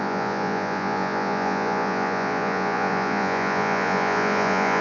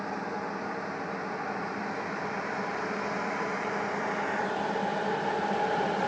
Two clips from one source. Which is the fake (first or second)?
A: first